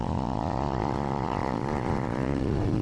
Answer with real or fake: fake